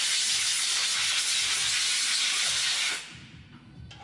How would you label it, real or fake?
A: real